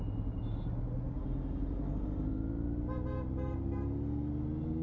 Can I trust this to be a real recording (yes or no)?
yes